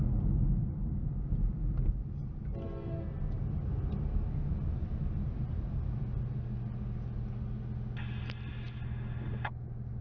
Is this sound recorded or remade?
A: recorded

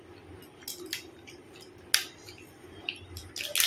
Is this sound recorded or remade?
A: recorded